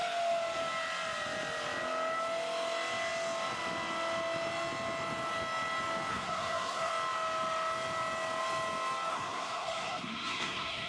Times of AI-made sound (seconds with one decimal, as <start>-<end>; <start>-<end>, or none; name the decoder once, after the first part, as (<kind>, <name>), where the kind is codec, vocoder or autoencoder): 6.1-6.9 (codec, SNAC); 9.1-10.9